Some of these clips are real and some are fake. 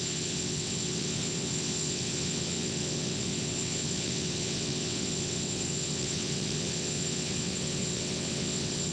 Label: fake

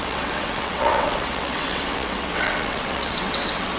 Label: fake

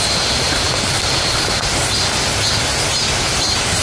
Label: real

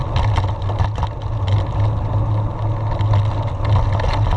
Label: real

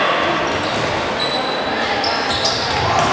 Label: real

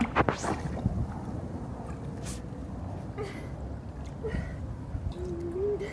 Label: real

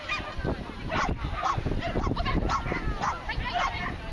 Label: real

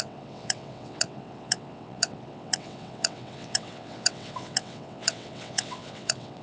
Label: fake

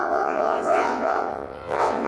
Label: fake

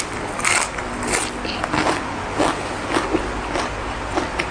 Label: real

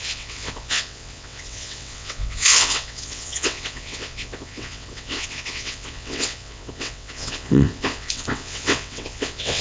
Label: fake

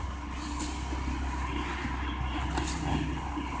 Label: real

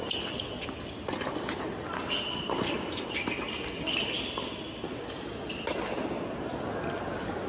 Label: real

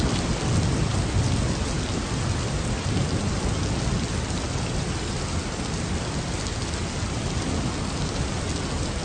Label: real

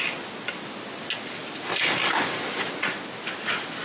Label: real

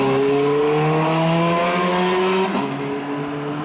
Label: real